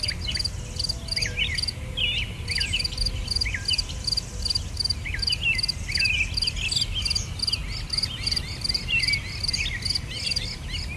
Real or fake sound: real